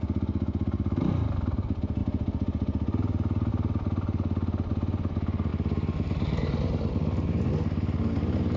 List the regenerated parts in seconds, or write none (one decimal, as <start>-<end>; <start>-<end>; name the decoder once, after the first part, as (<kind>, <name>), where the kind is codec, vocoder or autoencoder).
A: none